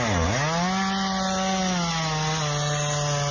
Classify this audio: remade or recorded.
recorded